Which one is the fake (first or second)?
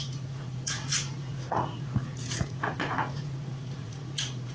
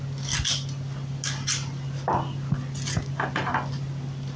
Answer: first